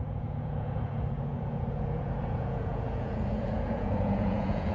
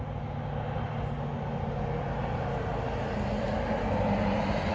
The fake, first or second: first